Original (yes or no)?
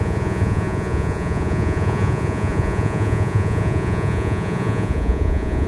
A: no